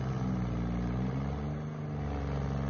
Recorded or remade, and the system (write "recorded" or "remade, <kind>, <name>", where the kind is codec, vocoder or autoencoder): recorded